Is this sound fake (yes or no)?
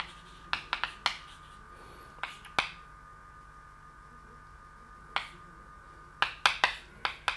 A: no